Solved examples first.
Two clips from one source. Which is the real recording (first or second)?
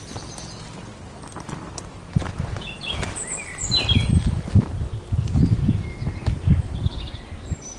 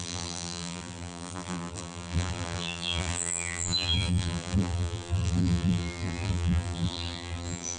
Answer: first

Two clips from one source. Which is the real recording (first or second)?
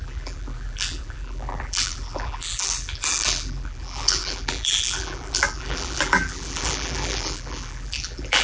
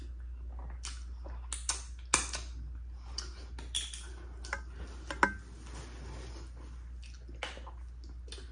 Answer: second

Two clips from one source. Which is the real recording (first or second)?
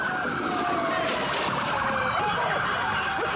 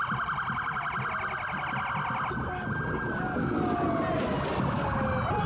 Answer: second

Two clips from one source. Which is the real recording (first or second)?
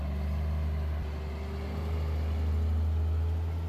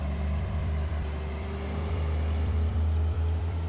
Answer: first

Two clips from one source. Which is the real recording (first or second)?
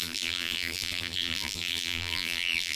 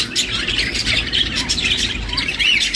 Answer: second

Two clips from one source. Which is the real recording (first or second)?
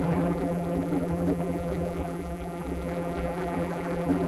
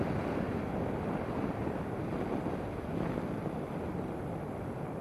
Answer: second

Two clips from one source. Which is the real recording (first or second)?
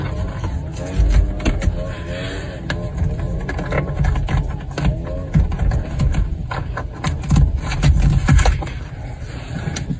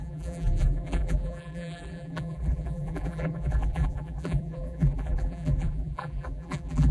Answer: first